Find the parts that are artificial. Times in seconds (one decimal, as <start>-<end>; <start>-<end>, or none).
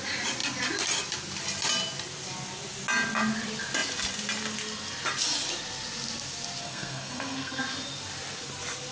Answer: 6.6-7.6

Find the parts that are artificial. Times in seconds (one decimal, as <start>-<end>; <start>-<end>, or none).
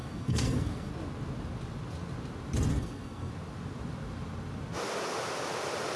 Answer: 0.0-0.9; 2.7-3.3